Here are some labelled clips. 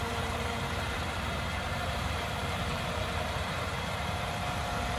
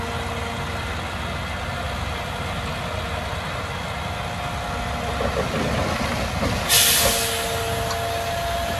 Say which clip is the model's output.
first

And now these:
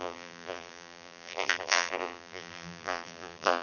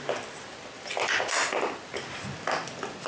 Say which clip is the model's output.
first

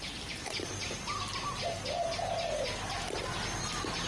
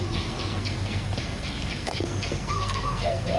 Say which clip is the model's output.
second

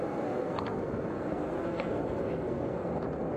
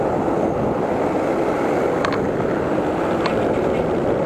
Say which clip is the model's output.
first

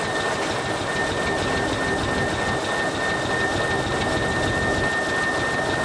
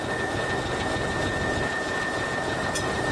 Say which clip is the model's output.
second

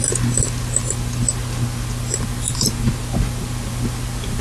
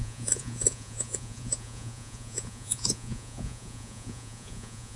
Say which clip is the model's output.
second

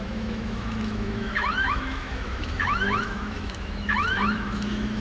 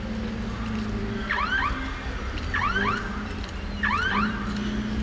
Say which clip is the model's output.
first